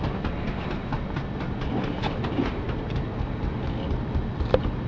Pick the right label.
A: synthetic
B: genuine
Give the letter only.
B